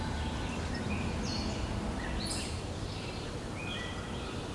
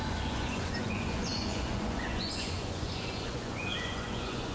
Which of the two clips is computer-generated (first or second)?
second